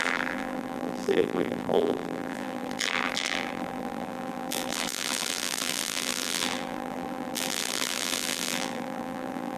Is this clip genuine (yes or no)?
no